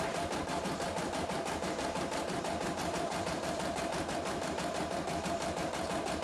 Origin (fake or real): fake